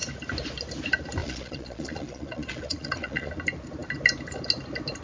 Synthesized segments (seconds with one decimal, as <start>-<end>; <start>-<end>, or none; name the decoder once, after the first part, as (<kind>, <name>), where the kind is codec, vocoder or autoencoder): 1.2-3.3 (vocoder, Vocos)